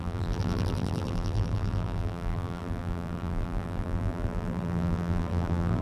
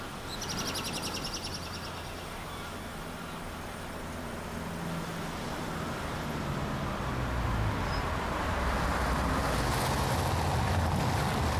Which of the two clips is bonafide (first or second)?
second